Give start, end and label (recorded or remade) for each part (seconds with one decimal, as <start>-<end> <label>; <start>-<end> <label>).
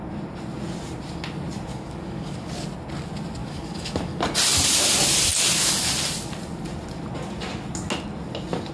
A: 0.0-1.7 recorded; 1.7-2.5 remade; 2.5-3.4 recorded; 3.4-4.2 remade; 4.2-8.7 recorded